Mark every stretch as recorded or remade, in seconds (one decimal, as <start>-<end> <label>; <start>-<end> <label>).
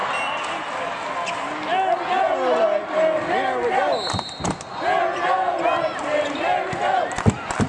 0.0-7.7 recorded